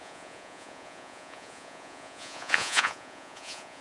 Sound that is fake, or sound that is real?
fake